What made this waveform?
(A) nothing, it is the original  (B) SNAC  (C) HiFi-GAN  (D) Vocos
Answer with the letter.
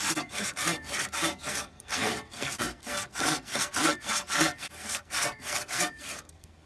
B